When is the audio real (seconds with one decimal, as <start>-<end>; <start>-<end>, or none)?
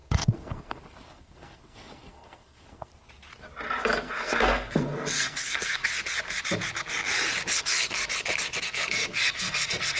2.9-3.8; 5.8-7.6; 8.0-8.6